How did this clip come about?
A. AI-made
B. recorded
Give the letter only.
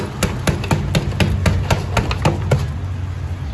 B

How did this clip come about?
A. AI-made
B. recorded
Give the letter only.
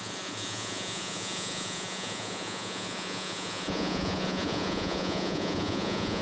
A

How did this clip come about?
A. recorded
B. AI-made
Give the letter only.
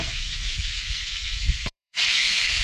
B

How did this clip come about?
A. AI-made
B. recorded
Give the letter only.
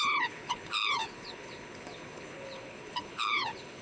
A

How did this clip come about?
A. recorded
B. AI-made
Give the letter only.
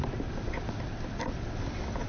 A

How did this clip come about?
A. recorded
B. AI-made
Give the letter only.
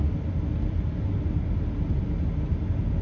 A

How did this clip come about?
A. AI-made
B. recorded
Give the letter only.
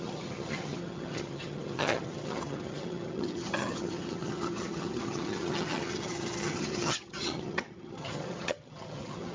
A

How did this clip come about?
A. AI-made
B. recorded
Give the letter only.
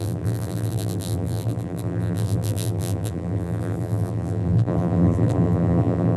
A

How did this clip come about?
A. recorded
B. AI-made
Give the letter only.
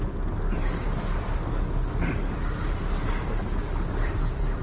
A